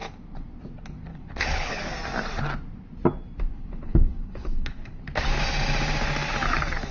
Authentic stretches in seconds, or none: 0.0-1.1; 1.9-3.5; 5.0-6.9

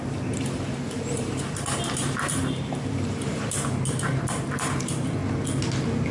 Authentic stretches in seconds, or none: 5.2-6.1

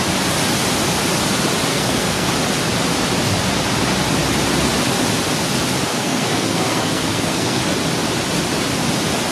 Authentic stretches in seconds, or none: 0.0-1.7; 2.3-5.9; 7.6-9.3